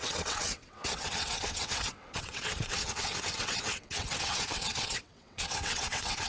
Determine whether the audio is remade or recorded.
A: remade